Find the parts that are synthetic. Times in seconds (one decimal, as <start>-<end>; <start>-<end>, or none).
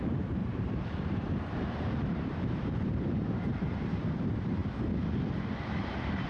0.4-4.1